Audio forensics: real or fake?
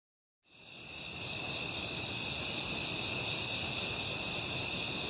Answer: real